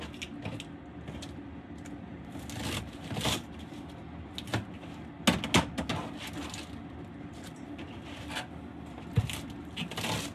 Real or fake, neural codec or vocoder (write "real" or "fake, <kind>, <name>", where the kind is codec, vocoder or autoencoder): real